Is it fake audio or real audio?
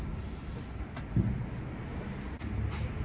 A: real